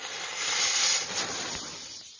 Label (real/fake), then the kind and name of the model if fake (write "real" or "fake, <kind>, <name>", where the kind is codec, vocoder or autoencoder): real